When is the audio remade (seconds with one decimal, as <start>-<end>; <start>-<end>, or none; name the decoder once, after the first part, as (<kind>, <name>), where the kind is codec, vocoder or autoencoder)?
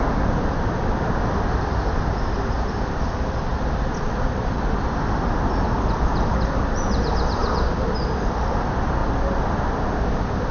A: none